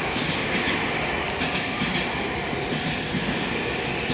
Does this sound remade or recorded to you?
recorded